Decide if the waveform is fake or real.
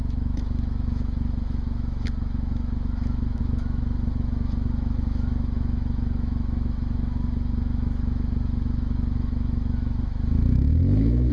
fake